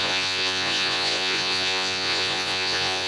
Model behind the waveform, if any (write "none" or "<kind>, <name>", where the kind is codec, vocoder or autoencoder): vocoder, Vocos